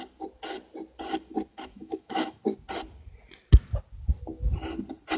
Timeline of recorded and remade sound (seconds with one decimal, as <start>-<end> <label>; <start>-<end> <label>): 0.0-1.5 recorded; 1.5-2.4 remade; 2.4-5.2 recorded

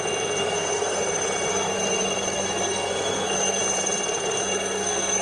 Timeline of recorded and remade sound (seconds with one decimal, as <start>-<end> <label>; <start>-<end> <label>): 0.0-0.4 recorded; 0.4-1.0 remade; 1.0-1.5 recorded; 1.5-3.6 remade; 3.6-4.4 recorded; 4.4-5.2 remade

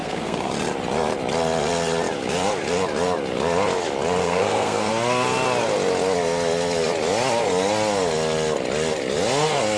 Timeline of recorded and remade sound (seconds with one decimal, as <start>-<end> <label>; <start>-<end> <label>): 0.0-0.5 remade; 0.5-4.2 recorded; 4.2-4.9 remade; 4.9-9.8 recorded

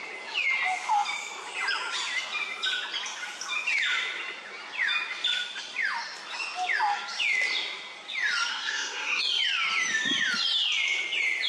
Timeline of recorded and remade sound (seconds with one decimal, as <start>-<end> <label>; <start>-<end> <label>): 0.0-8.5 recorded; 8.5-9.2 remade; 9.2-11.5 recorded

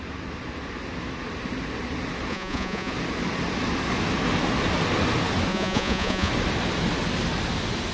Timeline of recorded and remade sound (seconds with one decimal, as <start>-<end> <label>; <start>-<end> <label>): 0.0-2.3 recorded; 2.3-2.9 remade; 2.9-5.5 recorded; 5.5-6.3 remade; 6.3-7.9 recorded

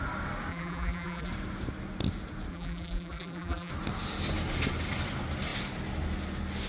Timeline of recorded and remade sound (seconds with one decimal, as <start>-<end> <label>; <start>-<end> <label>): 0.0-0.5 recorded; 0.5-1.3 remade; 1.3-2.5 recorded; 2.5-3.7 remade; 3.7-6.7 recorded

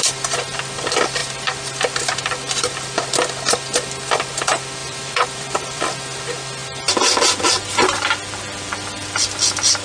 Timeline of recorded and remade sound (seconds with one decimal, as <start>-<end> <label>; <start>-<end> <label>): 0.0-4.8 recorded; 4.8-5.8 remade; 5.8-9.8 recorded